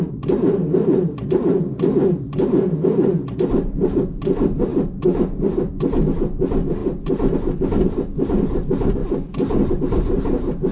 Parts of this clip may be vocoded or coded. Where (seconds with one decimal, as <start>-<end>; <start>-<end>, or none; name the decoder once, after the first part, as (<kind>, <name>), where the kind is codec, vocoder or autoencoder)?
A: none